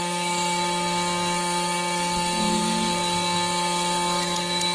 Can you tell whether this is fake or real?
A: fake